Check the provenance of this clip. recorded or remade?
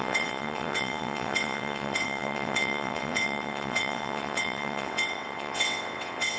remade